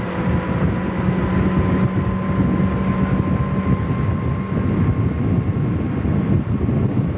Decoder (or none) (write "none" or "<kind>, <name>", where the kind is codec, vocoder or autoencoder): none